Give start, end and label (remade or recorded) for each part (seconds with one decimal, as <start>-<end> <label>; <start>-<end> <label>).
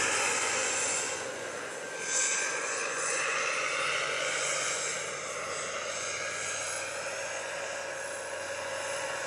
0.0-4.9 remade; 4.9-5.9 recorded; 5.9-9.3 remade